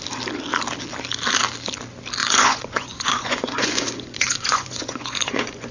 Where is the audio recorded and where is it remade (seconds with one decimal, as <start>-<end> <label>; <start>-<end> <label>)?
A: 0.0-2.2 recorded; 2.2-5.7 remade

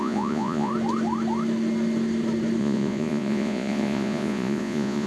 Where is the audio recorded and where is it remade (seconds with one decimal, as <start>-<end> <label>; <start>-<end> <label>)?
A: 0.0-0.7 remade; 0.7-2.6 recorded; 2.6-5.1 remade

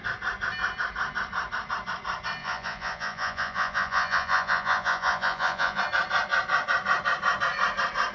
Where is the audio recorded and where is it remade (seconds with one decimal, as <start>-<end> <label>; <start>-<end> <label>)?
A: 0.0-2.4 recorded; 2.4-5.8 remade; 5.8-8.1 recorded

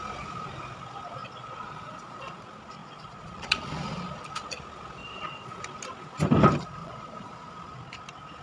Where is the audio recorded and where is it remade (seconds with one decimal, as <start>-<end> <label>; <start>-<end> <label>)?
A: 0.0-1.2 recorded; 1.2-2.4 remade; 2.4-2.8 recorded; 2.8-3.7 remade; 3.7-5.0 recorded; 5.0-5.6 remade; 5.6-6.8 recorded; 6.8-7.5 remade; 7.5-8.4 recorded

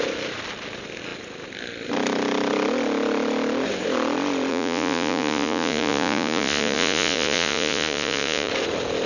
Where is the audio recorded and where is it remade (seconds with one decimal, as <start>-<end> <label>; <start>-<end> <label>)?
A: 0.0-4.5 recorded; 4.5-8.5 remade; 8.5-9.1 recorded

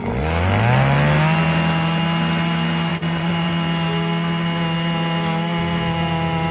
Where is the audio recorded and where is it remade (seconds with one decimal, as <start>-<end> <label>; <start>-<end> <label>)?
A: 0.0-2.9 recorded; 2.9-3.5 remade; 3.5-6.5 recorded

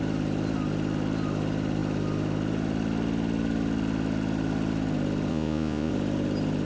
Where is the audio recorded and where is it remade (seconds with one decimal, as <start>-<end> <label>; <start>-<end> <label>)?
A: 0.0-5.3 recorded; 5.3-5.9 remade; 5.9-6.7 recorded

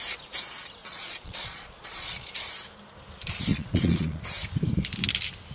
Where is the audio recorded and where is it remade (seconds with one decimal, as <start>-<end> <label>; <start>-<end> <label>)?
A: 0.0-0.8 recorded; 0.8-2.3 remade; 2.3-3.5 recorded; 3.5-4.2 remade; 4.2-5.5 recorded